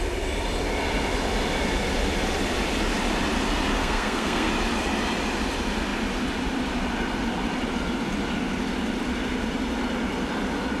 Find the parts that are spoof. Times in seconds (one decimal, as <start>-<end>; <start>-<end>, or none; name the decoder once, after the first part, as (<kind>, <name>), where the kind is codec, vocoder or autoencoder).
3.8-4.5 (codec, SNAC)